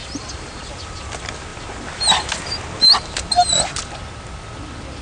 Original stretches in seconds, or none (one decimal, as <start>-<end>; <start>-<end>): 0.7-5.0